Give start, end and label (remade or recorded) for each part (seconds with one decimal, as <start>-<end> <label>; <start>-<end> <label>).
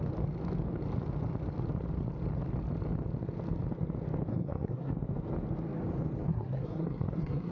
0.0-4.3 recorded; 4.3-4.9 remade; 4.9-6.3 recorded; 6.3-7.5 remade